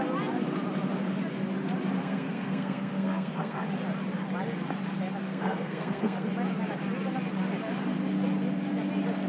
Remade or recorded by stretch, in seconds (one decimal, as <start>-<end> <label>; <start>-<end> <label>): 0.0-2.0 recorded; 2.0-3.7 remade; 3.7-5.2 recorded; 5.2-6.3 remade; 6.3-9.3 recorded